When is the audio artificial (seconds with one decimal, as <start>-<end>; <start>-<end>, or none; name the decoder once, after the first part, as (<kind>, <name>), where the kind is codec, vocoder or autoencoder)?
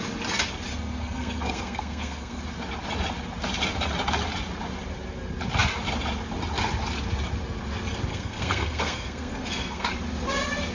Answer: 0.7-2.4 (codec, SNAC); 8.1-9.9